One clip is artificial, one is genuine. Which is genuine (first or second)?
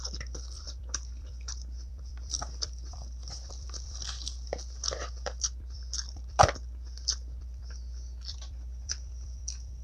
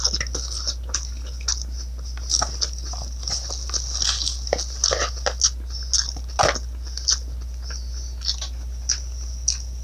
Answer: second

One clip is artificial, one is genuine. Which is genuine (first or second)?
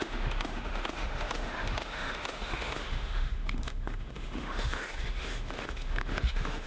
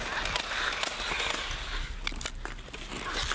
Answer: second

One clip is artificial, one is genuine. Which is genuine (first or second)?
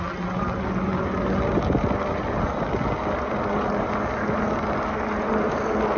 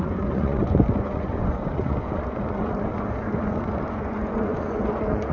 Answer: first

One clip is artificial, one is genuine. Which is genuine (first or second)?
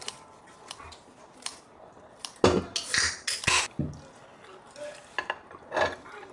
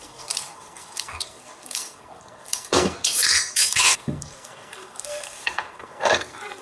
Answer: first